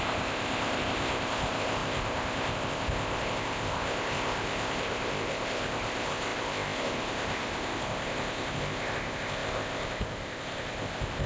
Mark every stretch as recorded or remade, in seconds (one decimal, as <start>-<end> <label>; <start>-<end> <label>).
0.0-11.3 remade